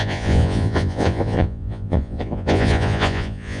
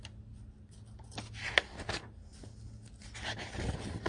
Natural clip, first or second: second